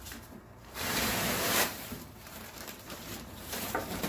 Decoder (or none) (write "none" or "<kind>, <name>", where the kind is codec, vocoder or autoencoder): vocoder, BigVGAN v2